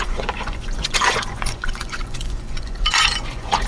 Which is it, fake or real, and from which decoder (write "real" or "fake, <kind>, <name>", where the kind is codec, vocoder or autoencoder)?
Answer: fake, vocoder, Vocos